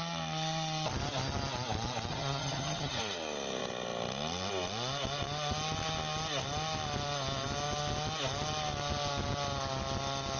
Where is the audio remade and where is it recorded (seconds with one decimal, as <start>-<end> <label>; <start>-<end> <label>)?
0.0-2.1 recorded; 2.1-3.0 remade; 3.0-10.4 recorded